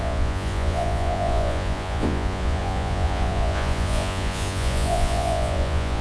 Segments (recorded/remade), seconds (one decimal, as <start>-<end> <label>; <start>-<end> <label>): 0.0-6.0 remade